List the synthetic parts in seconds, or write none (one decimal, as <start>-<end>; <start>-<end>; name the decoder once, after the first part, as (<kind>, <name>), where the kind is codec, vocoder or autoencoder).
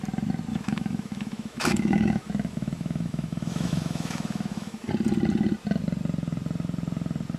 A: 0.5-4.9 (autoencoder, DAC-VAE)